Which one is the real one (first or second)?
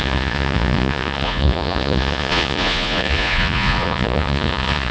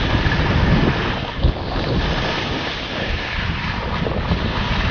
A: second